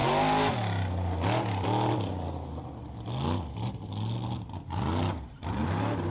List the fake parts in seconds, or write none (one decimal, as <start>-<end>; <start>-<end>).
none

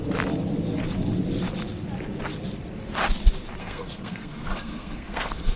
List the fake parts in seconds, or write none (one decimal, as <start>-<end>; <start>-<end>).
3.6-5.6

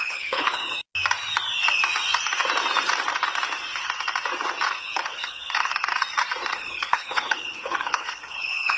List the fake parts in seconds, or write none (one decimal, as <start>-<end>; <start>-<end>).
0.0-0.6; 4.7-5.7; 6.5-8.8

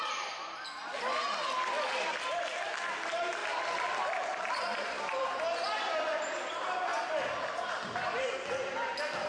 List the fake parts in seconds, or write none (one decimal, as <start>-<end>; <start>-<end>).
none